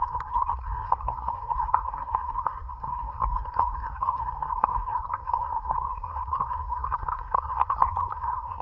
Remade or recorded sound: remade